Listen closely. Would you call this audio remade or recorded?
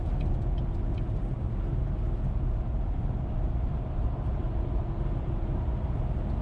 recorded